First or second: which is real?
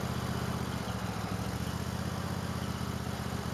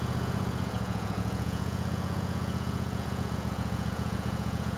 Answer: first